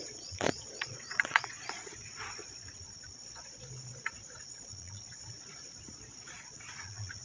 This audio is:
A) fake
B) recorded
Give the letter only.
A